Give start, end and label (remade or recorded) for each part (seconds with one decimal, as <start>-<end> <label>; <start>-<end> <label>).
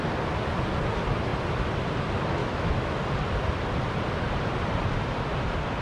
0.0-2.4 recorded; 2.4-3.0 remade; 3.0-5.8 recorded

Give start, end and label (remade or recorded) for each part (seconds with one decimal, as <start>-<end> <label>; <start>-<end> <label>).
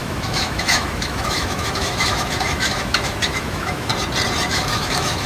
0.0-3.9 remade; 3.9-4.5 recorded; 4.5-5.3 remade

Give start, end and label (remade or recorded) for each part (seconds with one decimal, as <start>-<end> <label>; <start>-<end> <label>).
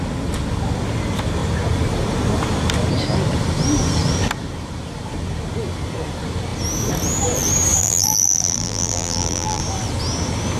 0.0-7.8 recorded; 7.8-9.6 remade; 9.6-10.6 recorded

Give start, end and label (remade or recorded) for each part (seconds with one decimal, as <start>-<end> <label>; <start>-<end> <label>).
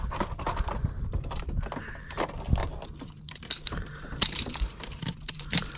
0.0-2.6 recorded; 2.6-5.8 remade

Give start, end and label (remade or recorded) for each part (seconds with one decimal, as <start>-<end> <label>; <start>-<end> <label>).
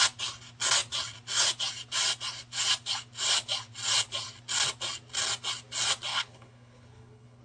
0.0-6.1 recorded; 6.1-7.4 remade